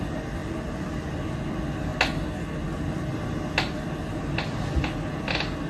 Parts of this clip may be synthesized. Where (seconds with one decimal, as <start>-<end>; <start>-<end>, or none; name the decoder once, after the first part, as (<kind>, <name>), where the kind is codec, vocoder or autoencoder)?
none